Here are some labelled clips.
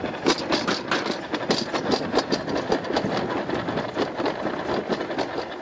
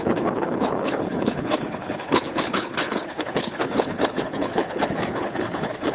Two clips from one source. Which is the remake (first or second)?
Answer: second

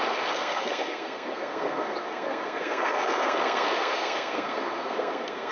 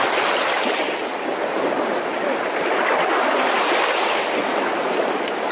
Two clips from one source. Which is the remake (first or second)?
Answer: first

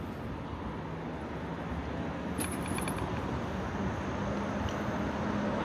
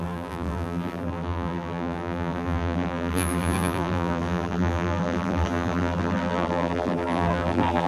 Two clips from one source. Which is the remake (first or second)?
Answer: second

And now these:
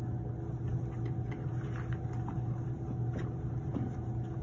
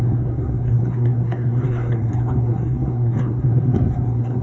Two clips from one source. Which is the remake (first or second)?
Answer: second